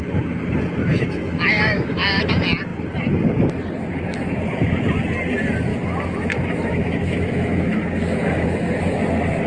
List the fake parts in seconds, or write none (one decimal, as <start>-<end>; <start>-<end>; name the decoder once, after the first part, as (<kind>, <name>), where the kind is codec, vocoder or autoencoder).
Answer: 0.8-2.2 (autoencoder, DAC-VAE); 5.7-9.0

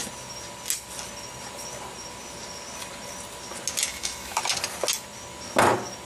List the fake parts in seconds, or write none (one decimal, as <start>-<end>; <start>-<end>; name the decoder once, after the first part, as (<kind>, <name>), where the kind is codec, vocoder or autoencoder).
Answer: 3.9-4.4 (autoencoder, DAC-VAE)

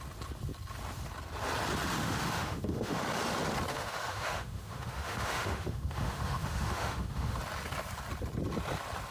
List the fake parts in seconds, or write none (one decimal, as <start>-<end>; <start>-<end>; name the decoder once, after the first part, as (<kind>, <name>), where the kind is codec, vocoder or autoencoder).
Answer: 2.0-3.0 (autoencoder, DAC-VAE); 3.7-7.4

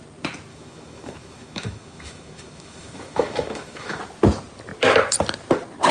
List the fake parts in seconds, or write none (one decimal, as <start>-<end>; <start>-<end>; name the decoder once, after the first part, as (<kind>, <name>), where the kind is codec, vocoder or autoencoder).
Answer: 0.5-4.0 (autoencoder, DAC-VAE)